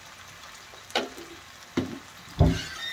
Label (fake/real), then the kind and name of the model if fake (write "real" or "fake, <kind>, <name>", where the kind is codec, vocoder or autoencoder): real